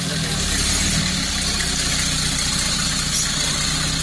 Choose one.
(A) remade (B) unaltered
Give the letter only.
B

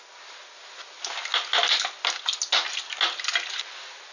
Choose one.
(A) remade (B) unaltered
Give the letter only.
B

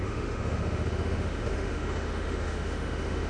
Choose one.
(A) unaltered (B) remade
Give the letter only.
B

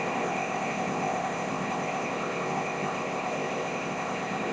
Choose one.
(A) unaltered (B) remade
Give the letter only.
B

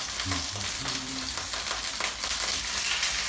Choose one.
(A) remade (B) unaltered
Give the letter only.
B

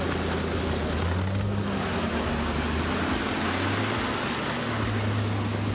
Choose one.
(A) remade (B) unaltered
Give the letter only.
B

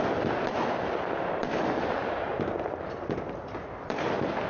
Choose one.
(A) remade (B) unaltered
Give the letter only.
B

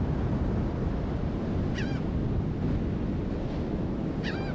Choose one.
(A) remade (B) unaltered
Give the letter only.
B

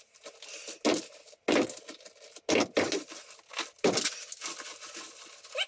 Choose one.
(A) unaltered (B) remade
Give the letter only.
A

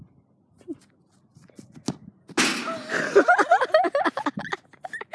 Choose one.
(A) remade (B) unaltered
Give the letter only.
B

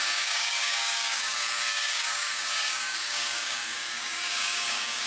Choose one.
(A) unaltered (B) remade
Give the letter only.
B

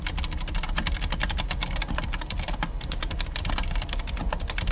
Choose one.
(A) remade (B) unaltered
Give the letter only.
B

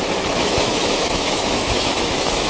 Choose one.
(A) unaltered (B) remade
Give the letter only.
B